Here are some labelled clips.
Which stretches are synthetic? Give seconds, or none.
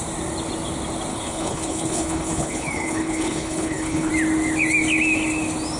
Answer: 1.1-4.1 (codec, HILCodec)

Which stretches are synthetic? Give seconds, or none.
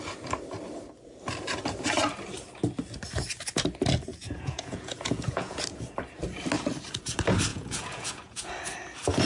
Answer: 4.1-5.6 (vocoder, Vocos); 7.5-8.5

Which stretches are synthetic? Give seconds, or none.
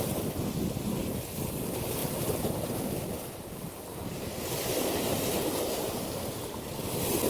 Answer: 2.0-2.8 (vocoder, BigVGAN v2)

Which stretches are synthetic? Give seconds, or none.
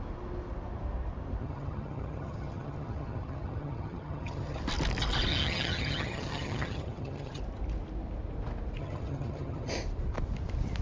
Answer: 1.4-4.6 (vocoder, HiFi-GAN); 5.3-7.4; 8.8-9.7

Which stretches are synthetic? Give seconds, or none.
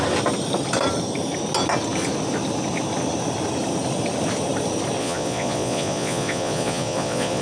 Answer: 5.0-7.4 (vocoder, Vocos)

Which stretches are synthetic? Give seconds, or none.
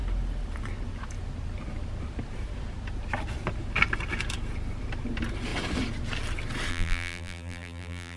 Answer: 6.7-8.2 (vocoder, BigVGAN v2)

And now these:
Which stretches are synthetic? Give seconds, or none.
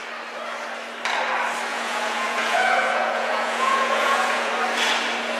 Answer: 1.7-4.5 (vocoder, Vocos)